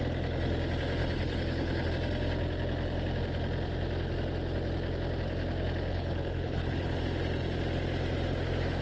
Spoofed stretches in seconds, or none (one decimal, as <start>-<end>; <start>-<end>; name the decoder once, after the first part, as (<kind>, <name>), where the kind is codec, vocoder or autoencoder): 1.0-1.9 (codec, HILCodec); 5.9-7.0